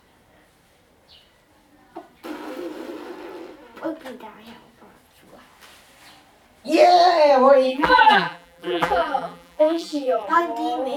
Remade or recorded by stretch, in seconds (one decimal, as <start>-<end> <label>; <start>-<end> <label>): 0.0-7.7 recorded; 7.7-10.4 remade; 10.4-11.0 recorded